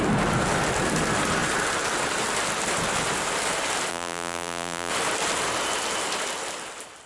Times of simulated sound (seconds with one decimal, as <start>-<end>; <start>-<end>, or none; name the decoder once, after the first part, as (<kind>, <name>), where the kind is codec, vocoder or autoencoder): 3.9-4.9 (vocoder, BigVGAN v2)